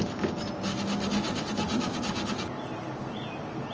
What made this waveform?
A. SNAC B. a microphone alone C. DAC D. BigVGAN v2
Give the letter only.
B